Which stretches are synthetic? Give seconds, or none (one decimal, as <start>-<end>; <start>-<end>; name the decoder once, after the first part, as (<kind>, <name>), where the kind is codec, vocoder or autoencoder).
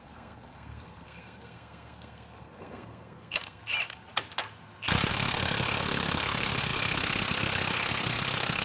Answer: 0.0-3.6 (codec, SNAC); 5.1-8.6